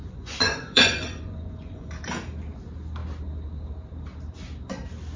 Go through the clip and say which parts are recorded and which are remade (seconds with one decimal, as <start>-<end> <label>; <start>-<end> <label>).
0.0-1.9 remade; 1.9-5.2 recorded